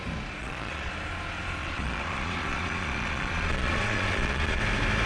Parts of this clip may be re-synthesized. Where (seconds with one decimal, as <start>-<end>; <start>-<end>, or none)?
0.4-0.9; 1.6-4.6